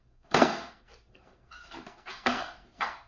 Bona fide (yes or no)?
no